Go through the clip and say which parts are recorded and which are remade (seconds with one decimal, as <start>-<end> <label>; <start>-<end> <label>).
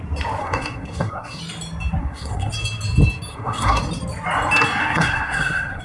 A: 0.0-0.4 recorded; 0.4-1.4 remade; 1.4-2.0 recorded; 2.0-2.5 remade; 2.5-3.3 recorded; 3.3-3.8 remade; 3.8-4.8 recorded; 4.8-5.8 remade